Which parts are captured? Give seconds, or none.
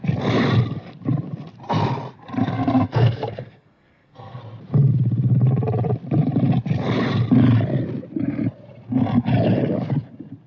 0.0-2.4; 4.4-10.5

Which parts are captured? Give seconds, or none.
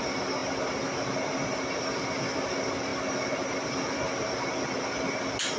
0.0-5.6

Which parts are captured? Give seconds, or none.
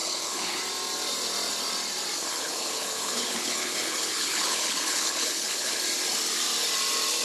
0.6-2.2; 5.8-7.2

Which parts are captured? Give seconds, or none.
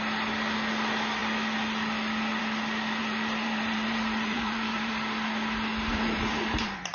0.0-3.0; 4.9-5.9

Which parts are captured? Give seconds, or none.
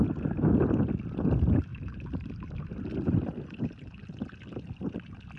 0.0-1.7; 2.8-5.4